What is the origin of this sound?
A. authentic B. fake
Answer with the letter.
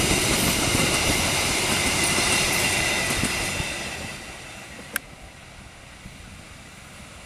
A